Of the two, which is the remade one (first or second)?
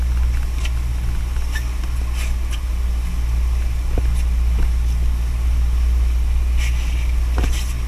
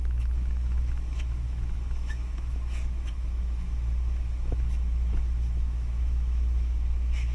second